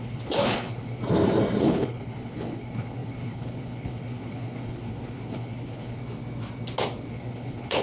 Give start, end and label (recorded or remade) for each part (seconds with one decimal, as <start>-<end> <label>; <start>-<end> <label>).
0.0-1.0 remade; 1.0-1.6 recorded; 1.6-6.0 remade; 6.0-7.1 recorded; 7.1-7.8 remade